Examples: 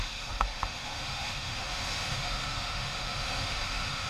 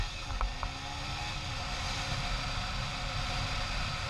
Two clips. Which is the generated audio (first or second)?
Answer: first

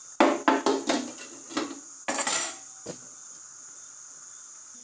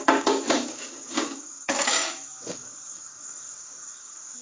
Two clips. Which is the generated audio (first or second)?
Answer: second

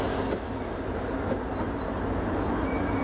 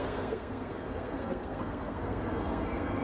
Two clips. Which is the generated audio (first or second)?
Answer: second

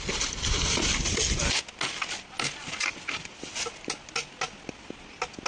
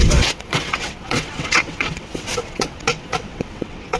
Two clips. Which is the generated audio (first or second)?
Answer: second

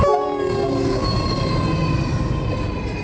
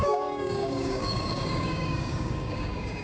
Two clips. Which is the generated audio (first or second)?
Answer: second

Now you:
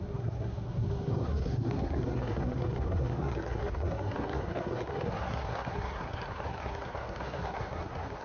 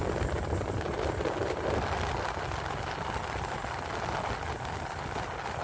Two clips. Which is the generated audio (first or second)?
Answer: first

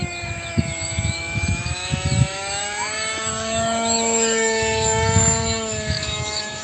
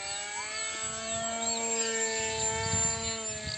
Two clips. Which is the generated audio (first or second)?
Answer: first